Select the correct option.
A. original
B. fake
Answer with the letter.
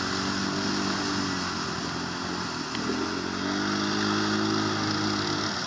A